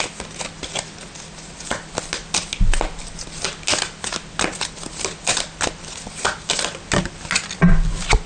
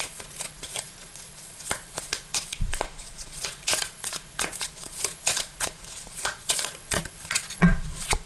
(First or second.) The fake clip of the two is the second